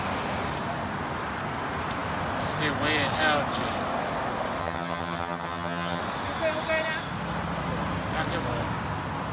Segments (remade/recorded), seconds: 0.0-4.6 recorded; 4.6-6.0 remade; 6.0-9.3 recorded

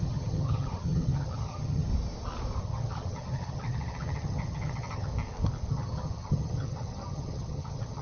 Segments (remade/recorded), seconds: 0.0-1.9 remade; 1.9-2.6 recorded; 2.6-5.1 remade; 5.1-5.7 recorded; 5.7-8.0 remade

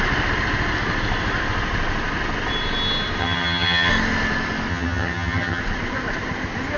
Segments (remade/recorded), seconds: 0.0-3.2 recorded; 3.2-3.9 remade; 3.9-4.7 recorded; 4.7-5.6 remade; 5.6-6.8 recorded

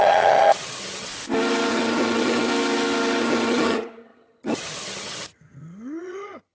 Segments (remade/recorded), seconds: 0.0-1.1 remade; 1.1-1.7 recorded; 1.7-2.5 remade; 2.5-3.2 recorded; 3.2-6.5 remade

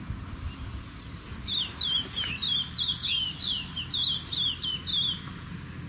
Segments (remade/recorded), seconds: 0.0-5.9 recorded

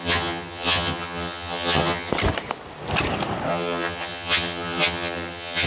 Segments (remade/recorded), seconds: 0.0-2.1 remade; 2.1-3.5 recorded; 3.5-5.7 remade